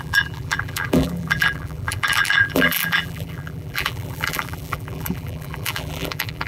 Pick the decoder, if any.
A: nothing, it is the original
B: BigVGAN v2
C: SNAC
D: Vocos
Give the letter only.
B